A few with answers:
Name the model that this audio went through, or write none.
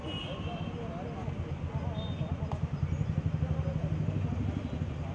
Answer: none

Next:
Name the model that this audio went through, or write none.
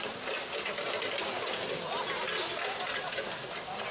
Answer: none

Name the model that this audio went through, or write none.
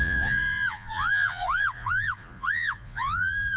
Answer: vocoder, Vocos